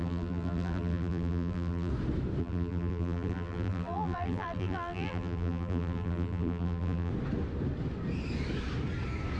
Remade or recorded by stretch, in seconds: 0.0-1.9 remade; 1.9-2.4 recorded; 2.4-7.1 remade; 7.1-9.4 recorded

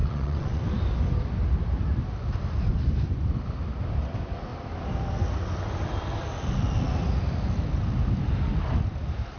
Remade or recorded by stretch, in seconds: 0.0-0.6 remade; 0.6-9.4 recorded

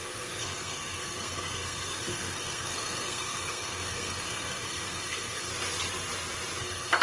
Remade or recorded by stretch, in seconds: 0.0-5.5 remade; 5.5-6.6 recorded; 6.6-7.0 remade